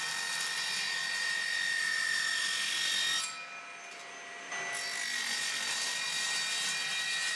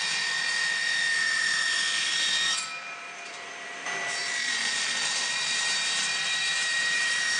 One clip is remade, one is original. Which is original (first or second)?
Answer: first